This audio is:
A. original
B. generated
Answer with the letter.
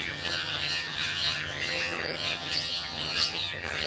B